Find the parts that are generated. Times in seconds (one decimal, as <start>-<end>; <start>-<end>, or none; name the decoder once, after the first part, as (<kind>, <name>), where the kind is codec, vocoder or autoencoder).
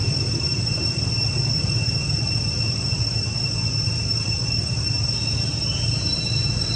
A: 0.0-0.9 (vocoder, BigVGAN v2)